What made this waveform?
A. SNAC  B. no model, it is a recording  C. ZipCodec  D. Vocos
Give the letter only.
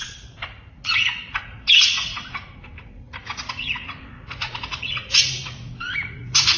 D